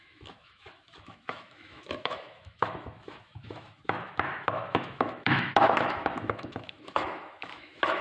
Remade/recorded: remade